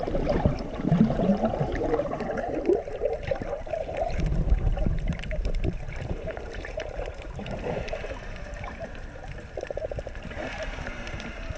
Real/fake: fake